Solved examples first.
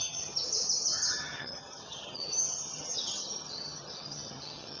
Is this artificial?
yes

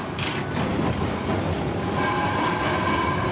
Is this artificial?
no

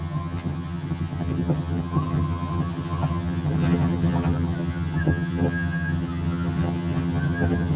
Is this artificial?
yes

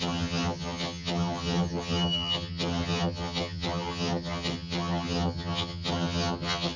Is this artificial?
yes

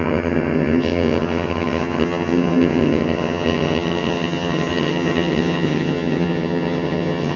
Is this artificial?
yes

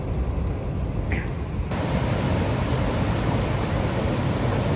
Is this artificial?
no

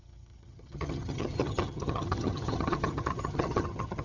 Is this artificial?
yes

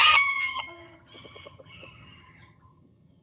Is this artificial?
yes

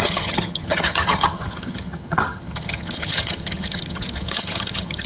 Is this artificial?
yes